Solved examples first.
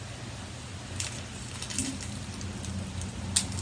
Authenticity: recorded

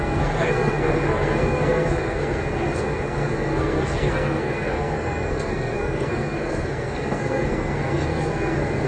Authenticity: remade